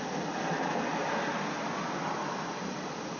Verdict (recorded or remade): recorded